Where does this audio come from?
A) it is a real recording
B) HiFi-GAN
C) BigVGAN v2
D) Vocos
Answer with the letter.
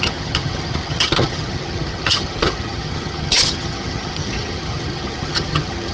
B